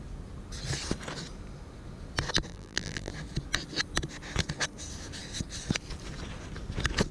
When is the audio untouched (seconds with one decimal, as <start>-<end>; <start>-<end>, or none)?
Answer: 0.0-2.5; 3.1-7.1